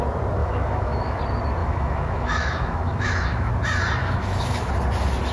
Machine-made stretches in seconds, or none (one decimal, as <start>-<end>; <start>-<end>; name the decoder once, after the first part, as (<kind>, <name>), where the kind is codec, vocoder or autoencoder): 0.4-1.2 (autoencoder, DAC-VAE); 1.6-3.5; 4.0-4.7